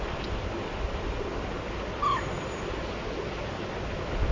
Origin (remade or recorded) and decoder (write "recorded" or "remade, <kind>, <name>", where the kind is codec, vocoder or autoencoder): recorded